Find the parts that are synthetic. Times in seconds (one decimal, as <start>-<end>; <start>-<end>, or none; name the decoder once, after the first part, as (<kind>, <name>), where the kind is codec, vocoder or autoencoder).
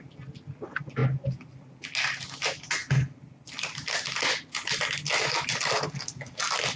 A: none